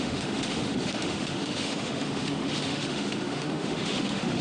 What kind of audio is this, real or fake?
fake